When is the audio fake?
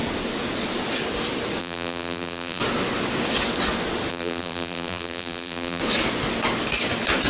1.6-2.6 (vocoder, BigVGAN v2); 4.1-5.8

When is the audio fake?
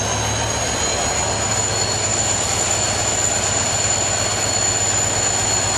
2.1-2.7 (vocoder, BigVGAN v2)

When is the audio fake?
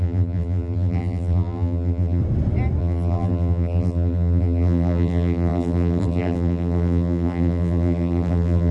0.0-2.2 (vocoder, BigVGAN v2); 2.8-8.7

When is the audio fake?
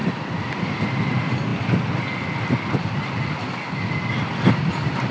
0.0-0.6 (vocoder, BigVGAN v2)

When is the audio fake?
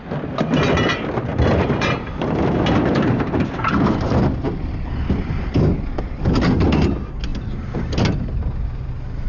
1.3-6.2 (vocoder, BigVGAN v2); 7.3-8.9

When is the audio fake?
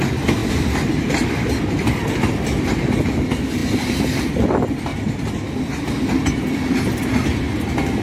0.4-1.9 (vocoder, BigVGAN v2)